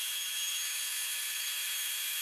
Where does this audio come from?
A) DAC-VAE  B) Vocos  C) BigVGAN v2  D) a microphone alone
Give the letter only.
A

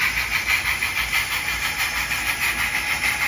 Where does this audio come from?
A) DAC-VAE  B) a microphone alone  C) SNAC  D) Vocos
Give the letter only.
B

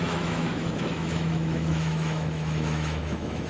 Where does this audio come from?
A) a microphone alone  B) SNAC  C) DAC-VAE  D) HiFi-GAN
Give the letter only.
C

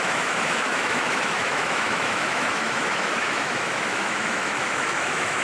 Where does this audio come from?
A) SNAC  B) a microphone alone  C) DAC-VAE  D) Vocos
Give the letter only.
C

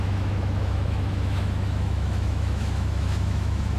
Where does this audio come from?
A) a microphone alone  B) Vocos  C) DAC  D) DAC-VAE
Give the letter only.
D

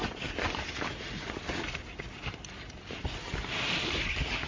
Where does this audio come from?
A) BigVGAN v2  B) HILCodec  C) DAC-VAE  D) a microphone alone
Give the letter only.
D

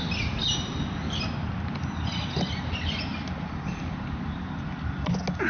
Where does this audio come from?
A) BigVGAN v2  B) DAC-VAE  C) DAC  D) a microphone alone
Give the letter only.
D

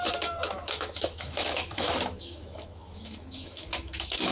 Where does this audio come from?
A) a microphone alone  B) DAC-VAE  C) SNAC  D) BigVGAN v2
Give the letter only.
B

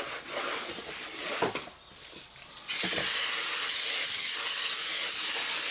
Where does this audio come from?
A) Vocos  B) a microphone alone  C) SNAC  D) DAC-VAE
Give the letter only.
B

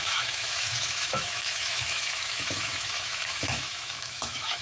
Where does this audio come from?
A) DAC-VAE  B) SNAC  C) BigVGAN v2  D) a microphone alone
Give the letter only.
A